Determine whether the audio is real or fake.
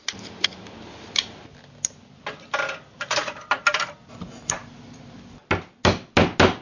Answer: real